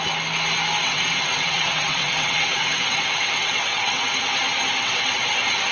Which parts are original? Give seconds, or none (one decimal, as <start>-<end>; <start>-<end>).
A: 0.0-0.8; 4.2-4.8; 5.3-5.7